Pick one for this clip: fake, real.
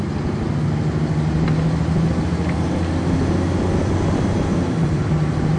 real